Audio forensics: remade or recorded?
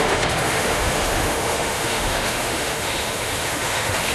remade